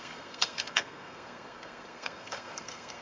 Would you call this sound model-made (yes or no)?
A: yes